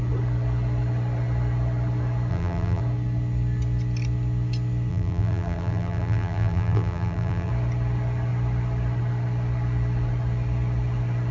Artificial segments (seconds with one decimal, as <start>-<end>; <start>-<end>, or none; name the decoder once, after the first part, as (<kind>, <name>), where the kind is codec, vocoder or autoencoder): 2.3-2.8 (vocoder, BigVGAN v2); 4.9-7.5